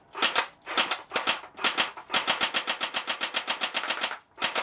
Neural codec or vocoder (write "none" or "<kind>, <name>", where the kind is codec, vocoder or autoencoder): none